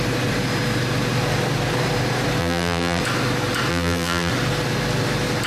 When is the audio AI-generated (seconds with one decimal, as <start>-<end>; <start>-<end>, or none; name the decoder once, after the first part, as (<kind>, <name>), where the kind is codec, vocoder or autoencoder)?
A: 2.4-3.0 (vocoder, BigVGAN v2); 3.7-4.3